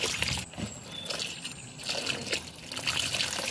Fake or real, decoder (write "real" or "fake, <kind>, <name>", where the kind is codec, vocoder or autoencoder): real